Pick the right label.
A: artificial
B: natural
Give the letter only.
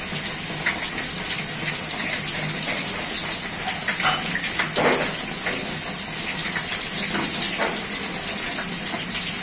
B